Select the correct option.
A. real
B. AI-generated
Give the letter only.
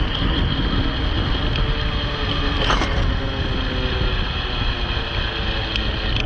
A